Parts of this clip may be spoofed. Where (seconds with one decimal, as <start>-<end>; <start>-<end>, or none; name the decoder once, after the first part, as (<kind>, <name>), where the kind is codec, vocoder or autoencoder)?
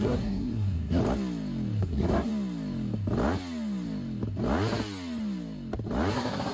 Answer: 0.0-1.0 (codec, SNAC); 1.8-2.3; 6.1-6.5